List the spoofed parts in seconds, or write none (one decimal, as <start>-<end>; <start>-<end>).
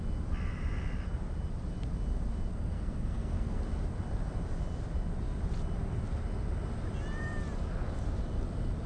2.5-3.6